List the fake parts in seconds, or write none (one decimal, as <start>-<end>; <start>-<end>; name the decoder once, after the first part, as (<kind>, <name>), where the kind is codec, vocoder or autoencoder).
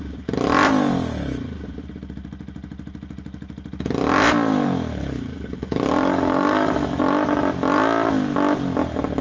5.0-7.0 (codec, DAC)